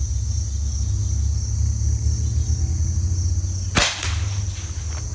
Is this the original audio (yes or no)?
yes